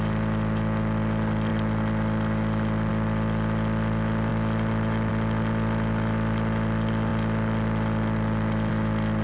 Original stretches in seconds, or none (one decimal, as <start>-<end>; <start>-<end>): 0.0-9.2

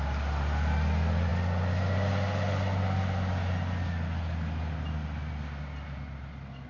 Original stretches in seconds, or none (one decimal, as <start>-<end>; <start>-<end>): 0.0-6.7

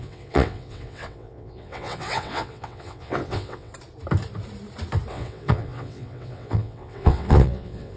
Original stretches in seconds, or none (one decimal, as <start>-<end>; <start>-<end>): 3.7-5.1

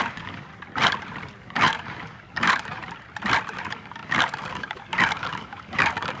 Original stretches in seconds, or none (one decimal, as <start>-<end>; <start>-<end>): 0.5-1.4; 2.8-3.6

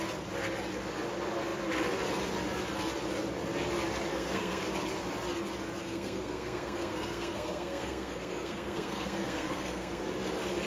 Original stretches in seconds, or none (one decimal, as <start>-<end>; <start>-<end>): 0.0-4.1; 4.6-5.8; 10.0-10.7

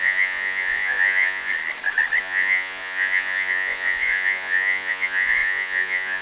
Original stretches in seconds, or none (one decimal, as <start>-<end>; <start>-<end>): 1.5-2.2